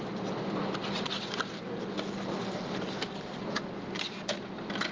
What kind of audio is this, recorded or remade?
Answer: recorded